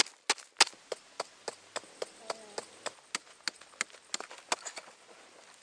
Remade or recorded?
recorded